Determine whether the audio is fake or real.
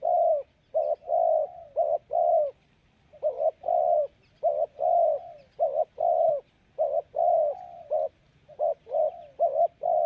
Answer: real